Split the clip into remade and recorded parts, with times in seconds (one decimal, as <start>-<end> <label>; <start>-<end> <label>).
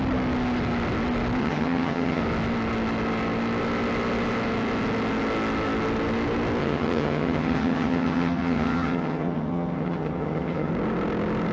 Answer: 0.0-1.4 recorded; 1.4-2.2 remade; 2.2-6.6 recorded; 6.6-10.7 remade; 10.7-11.5 recorded